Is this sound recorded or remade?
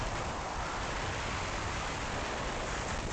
recorded